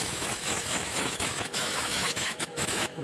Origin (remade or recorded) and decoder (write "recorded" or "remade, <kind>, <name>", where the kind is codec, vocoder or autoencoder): remade, autoencoder, DAC-VAE